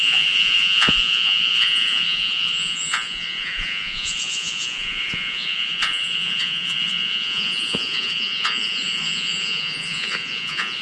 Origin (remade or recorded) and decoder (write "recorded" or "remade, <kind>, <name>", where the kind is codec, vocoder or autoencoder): remade, vocoder, Vocos